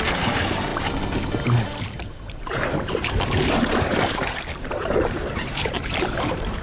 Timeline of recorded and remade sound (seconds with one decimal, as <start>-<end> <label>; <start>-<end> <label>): 0.0-0.7 remade; 0.7-1.8 recorded; 1.8-6.6 remade